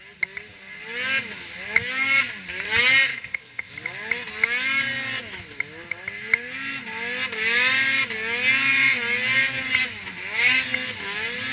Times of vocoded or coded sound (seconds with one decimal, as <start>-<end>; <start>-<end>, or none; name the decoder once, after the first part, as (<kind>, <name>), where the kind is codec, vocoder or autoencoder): 3.1-3.7 (codec, HILCodec)